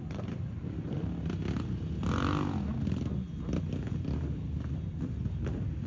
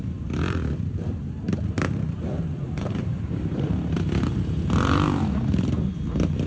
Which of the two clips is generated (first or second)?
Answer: second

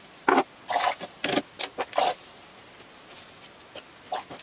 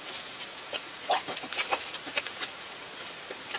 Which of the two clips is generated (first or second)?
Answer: second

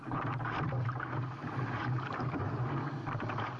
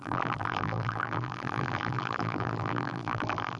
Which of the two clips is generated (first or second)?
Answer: second